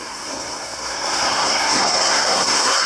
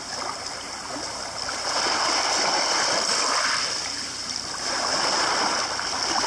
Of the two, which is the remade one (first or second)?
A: first